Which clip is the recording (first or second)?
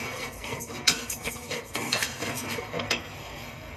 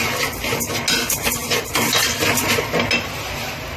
second